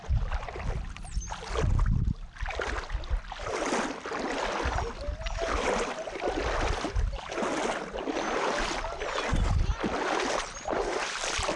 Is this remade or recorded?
recorded